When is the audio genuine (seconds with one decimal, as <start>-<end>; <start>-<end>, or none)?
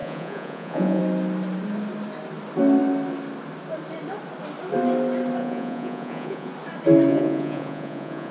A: 1.0-5.4; 6.5-7.1